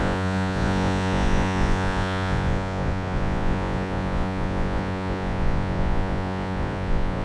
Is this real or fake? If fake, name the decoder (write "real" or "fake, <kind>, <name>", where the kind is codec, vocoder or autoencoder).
fake, vocoder, Vocos